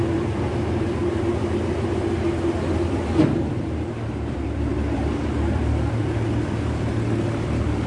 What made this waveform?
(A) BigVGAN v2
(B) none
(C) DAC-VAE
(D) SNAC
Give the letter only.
A